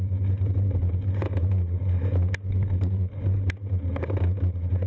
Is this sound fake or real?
real